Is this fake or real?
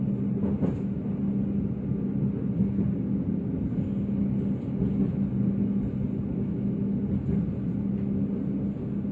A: real